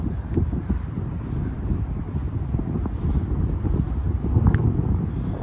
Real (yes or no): yes